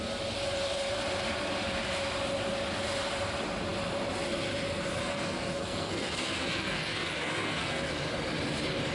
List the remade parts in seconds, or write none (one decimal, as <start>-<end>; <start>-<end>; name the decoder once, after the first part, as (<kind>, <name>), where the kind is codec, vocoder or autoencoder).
5.0-7.9 (codec, SNAC)